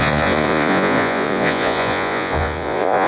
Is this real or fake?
fake